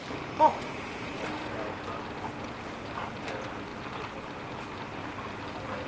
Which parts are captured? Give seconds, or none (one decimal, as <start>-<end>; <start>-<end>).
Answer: 0.0-0.5; 1.2-5.9